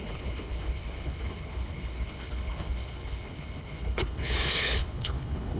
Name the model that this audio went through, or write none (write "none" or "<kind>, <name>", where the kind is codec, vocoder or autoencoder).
codec, HILCodec